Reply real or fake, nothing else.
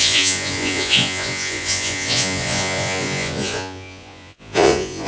fake